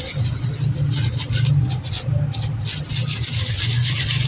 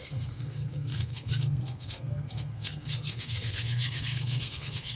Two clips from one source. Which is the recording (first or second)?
first